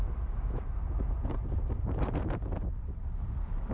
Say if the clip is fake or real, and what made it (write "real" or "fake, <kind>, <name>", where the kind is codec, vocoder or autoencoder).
fake, vocoder, BigVGAN v2